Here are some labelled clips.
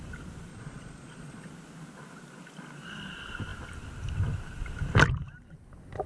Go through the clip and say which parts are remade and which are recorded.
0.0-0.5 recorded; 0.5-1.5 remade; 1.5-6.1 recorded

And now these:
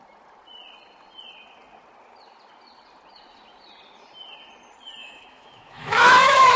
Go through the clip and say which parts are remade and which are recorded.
0.0-5.0 recorded; 5.0-6.6 remade